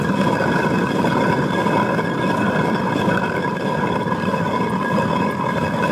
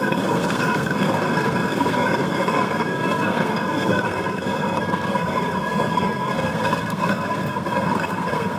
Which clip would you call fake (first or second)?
second